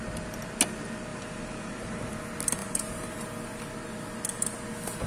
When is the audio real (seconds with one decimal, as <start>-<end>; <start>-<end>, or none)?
0.0-1.1; 2.1-2.6; 3.1-5.1